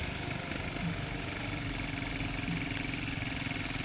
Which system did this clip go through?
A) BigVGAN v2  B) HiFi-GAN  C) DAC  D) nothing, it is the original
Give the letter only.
D